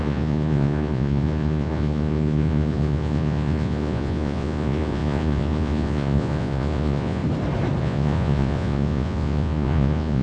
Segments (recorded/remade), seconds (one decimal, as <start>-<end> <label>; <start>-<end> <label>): 0.0-7.2 remade; 7.2-7.8 recorded; 7.8-10.2 remade